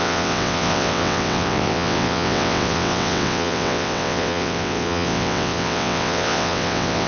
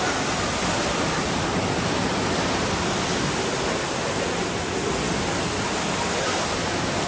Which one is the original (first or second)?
second